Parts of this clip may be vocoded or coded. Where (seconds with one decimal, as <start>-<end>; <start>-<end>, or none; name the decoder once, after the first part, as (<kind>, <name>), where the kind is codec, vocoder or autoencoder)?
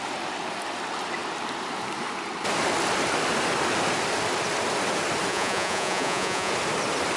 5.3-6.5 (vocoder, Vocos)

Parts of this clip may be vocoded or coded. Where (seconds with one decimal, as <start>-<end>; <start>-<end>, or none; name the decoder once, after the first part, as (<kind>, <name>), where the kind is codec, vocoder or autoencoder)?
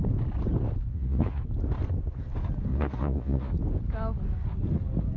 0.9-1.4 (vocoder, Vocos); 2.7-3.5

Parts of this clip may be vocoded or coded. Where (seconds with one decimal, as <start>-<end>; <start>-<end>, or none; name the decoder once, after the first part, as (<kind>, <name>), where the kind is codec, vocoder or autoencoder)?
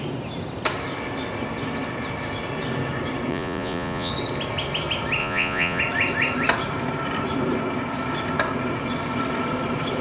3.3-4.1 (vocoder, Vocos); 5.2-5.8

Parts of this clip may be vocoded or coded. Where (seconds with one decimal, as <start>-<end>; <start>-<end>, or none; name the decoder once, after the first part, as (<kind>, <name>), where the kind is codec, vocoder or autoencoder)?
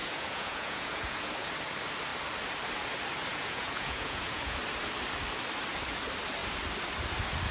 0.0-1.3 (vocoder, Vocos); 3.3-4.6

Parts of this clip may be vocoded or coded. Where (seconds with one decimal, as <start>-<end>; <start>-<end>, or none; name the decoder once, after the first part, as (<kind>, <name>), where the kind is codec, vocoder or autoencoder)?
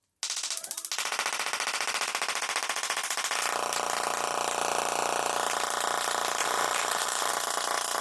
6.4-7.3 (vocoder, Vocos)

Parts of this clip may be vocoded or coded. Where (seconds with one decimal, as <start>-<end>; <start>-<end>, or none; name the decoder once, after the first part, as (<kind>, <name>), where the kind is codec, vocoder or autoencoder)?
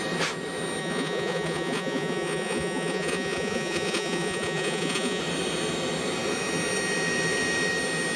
0.8-5.2 (vocoder, Vocos)